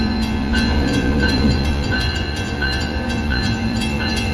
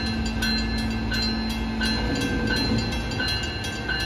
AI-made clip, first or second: first